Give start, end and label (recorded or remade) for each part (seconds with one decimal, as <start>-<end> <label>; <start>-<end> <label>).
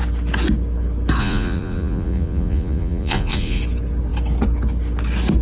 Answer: 0.0-1.2 recorded; 1.2-3.6 remade; 3.6-5.4 recorded